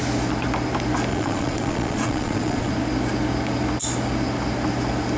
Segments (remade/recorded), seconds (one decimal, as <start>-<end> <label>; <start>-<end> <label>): 0.0-1.1 recorded; 1.1-2.7 remade; 2.7-5.2 recorded